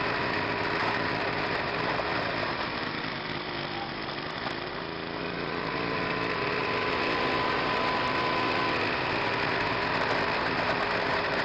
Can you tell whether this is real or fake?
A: real